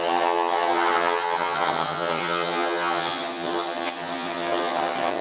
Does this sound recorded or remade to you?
remade